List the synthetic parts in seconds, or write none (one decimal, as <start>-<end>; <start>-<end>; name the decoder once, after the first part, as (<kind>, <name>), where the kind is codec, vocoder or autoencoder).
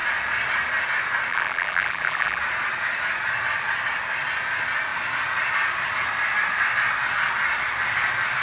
1.3-2.4 (vocoder, BigVGAN v2)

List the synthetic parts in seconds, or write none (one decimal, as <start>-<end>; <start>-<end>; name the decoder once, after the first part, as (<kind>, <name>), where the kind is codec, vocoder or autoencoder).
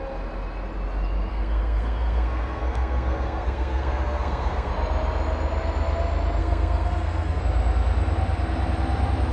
1.3-4.7 (codec, SNAC); 6.4-7.4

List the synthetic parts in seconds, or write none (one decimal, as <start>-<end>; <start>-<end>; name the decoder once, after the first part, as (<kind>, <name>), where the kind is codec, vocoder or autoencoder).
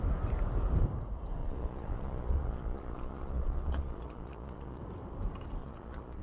1.4-4.8 (vocoder, Vocos); 5.6-6.2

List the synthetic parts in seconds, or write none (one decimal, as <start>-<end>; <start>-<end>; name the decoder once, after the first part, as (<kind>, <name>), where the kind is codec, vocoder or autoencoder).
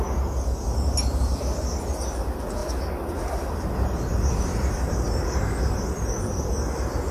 2.6-5.8 (vocoder, BigVGAN v2)